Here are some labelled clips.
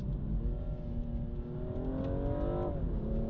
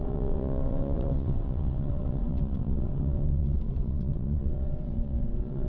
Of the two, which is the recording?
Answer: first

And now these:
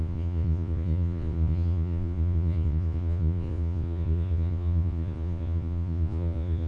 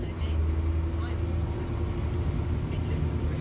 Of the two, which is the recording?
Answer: second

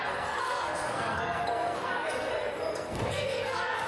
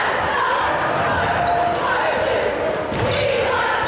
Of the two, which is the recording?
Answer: second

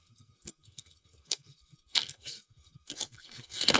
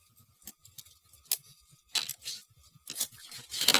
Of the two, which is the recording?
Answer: second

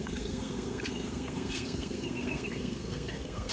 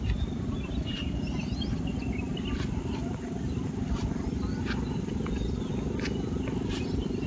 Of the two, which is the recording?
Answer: second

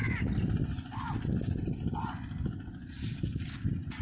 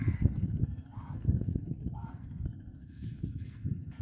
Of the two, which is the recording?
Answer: first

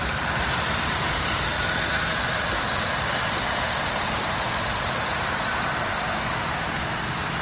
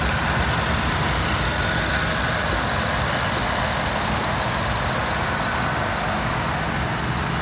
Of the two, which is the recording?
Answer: second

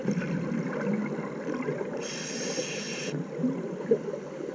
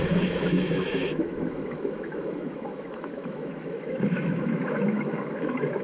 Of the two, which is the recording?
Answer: first